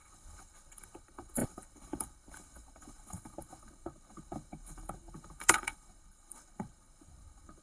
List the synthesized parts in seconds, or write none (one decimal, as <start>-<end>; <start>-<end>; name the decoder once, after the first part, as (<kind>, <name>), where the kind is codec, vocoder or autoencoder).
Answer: 0.0-7.6 (codec, HILCodec)